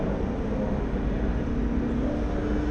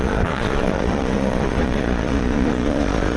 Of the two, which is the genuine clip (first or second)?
first